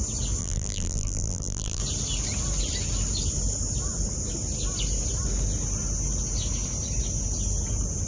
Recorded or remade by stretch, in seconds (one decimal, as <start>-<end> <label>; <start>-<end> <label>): 0.0-0.4 recorded; 0.4-1.8 remade; 1.8-8.1 recorded